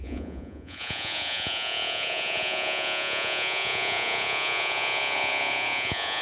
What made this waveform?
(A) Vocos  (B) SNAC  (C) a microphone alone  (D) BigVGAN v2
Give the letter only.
A